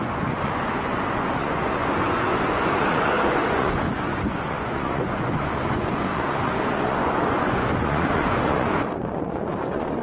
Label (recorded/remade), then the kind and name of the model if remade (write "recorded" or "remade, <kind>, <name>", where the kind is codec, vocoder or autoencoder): remade, vocoder, Vocos